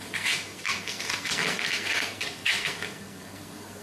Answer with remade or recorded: remade